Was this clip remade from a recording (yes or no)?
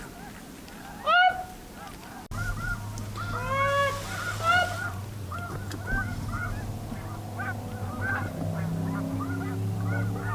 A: no